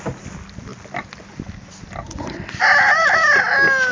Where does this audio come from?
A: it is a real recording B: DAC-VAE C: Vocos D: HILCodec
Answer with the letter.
A